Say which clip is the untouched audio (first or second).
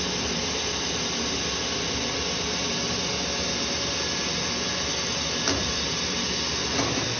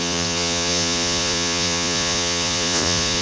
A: first